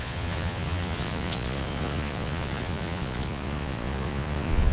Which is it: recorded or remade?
remade